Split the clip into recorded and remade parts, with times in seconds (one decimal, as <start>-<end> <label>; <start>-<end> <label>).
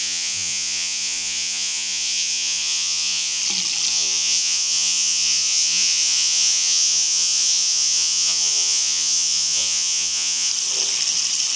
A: 0.0-3.4 remade; 3.4-3.9 recorded; 3.9-10.5 remade; 10.5-11.6 recorded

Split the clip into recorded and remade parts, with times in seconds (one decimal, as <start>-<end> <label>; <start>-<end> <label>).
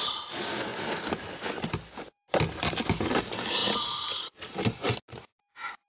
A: 0.0-5.9 recorded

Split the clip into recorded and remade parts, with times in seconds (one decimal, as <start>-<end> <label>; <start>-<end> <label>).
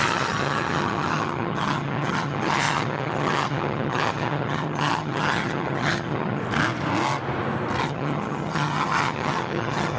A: 0.0-6.4 remade; 6.4-7.8 recorded; 7.8-10.0 remade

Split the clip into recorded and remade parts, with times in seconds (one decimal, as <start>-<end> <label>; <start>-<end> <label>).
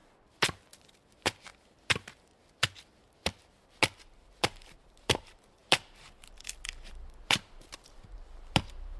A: 0.0-5.6 recorded; 5.6-6.9 remade; 6.9-9.0 recorded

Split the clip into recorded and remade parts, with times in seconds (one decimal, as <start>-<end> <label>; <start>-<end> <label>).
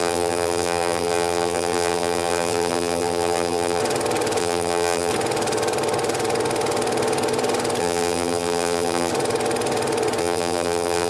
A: 0.0-3.8 remade; 3.8-4.4 recorded; 4.4-5.1 remade; 5.1-7.8 recorded; 7.8-9.1 remade; 9.1-10.2 recorded; 10.2-11.1 remade